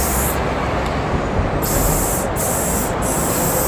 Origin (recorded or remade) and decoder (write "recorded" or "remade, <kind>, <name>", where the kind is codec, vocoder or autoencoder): remade, vocoder, BigVGAN v2